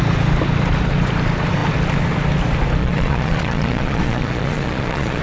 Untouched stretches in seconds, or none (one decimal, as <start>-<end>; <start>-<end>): 0.0-2.8

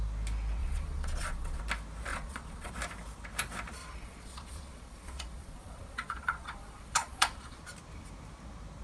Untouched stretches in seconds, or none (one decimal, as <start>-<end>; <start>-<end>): 0.0-0.6; 1.6-2.1; 2.7-3.8; 7.6-8.8

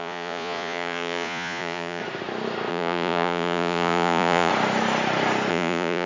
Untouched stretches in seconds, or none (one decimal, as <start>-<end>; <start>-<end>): 2.0-2.7; 4.5-5.5

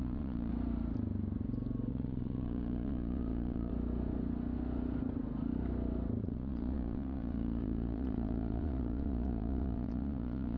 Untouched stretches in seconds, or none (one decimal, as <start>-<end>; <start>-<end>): 0.5-1.9; 3.7-6.2

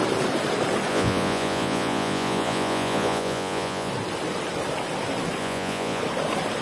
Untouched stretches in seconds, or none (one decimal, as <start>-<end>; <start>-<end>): 0.0-0.9; 3.9-5.4; 6.0-6.6

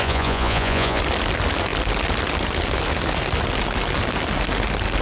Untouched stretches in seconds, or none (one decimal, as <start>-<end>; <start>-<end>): 1.0-5.0